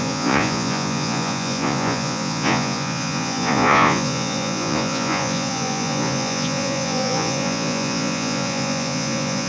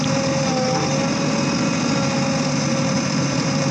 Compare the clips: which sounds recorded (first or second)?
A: second